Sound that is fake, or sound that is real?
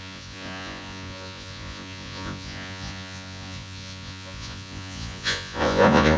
fake